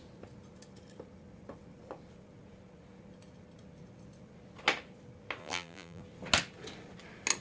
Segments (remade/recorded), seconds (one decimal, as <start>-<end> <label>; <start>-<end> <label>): 0.0-5.4 recorded; 5.4-6.0 remade; 6.0-7.4 recorded